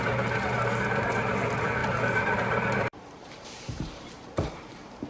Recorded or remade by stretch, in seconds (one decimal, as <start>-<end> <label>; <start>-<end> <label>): 0.0-5.1 remade